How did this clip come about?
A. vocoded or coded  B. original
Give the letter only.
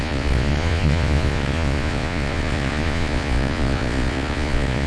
A